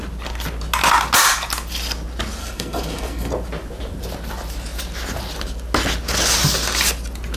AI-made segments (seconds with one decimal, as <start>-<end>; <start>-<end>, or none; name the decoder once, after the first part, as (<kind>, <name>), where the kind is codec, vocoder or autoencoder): 2.4-3.3 (codec, SNAC)